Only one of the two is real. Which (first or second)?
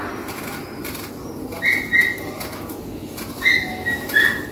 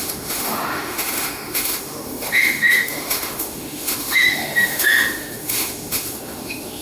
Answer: first